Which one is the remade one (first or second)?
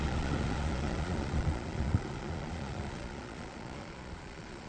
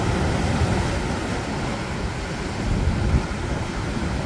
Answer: first